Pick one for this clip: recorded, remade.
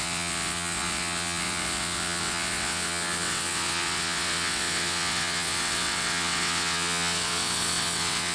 remade